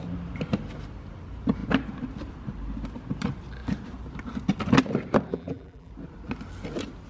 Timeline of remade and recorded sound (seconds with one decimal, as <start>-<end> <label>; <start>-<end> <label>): 0.0-5.3 recorded; 5.3-5.9 remade; 5.9-7.1 recorded